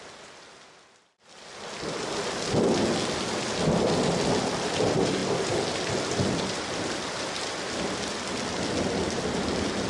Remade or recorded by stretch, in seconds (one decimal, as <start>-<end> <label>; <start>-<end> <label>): 0.0-9.9 recorded